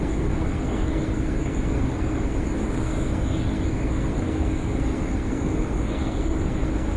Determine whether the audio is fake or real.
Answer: fake